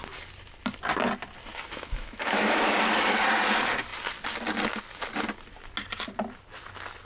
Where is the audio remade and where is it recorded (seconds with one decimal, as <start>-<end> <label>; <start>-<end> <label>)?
0.0-1.5 recorded; 1.5-2.7 remade; 2.7-7.1 recorded